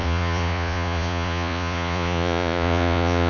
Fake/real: fake